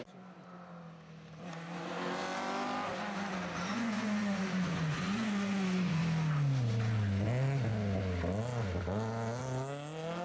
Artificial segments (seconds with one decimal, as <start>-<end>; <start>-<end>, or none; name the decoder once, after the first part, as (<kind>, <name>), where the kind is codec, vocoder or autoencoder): 3.7-6.0 (vocoder, Vocos)